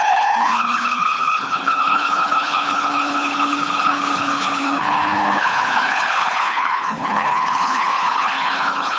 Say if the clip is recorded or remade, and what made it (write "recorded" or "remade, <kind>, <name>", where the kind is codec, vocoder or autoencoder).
remade, codec, HILCodec